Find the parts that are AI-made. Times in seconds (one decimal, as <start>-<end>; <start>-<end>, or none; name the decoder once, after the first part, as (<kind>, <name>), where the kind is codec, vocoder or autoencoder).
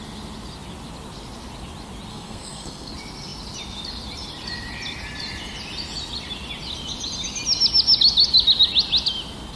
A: 2.1-2.9 (codec, SNAC)